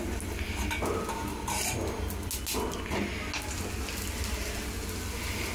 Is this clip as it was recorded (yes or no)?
yes